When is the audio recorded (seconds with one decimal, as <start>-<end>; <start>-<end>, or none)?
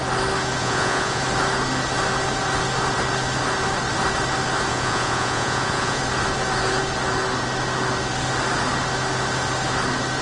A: 0.0-0.6; 1.2-4.7; 6.0-10.2